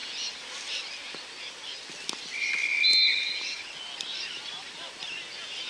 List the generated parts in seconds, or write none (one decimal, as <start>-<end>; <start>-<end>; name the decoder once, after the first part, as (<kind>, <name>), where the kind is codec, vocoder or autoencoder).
4.1-4.9 (vocoder, BigVGAN v2)